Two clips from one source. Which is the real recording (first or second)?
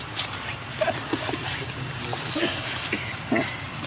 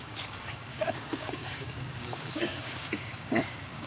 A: first